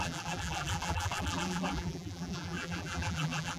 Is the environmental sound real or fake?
fake